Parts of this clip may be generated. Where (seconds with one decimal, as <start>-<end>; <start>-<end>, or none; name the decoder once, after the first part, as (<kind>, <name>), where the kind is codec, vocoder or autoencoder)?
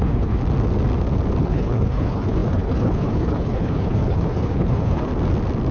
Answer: 0.0-0.4 (codec, HILCodec); 1.4-5.1